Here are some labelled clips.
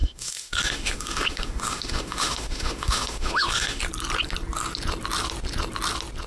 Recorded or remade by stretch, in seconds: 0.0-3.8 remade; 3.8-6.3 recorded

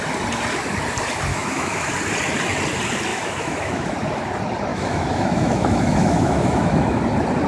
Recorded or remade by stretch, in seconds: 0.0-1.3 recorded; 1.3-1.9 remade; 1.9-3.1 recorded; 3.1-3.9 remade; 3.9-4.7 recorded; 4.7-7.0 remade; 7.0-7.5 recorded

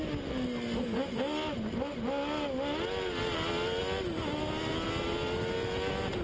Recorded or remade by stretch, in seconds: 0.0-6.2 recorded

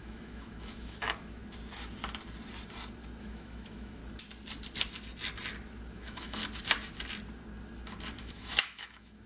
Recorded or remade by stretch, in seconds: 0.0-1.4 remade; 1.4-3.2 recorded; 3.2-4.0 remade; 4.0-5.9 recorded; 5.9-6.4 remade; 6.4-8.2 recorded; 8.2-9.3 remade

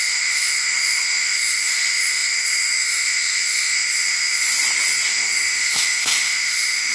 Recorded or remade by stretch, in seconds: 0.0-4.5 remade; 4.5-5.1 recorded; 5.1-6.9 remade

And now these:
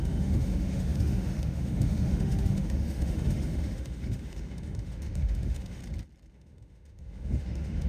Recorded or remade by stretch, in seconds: 0.0-5.8 remade; 5.8-6.3 recorded; 6.3-7.9 remade

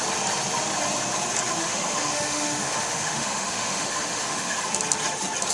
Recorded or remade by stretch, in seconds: 0.0-1.6 recorded; 1.6-4.6 remade; 4.6-5.5 recorded

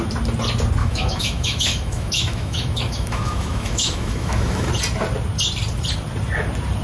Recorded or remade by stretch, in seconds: 0.0-0.8 recorded; 0.8-4.7 remade; 4.7-6.8 recorded